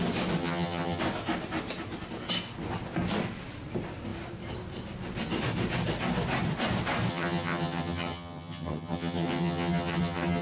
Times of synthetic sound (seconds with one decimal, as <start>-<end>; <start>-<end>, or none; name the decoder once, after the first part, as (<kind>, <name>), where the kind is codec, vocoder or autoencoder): 0.4-1.0 (vocoder, HiFi-GAN); 7.1-10.4